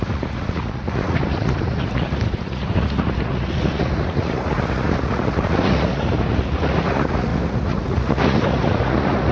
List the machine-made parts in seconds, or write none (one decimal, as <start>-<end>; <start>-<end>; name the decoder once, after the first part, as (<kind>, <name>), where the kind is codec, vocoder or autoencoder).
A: 0.0-9.3 (vocoder, Vocos)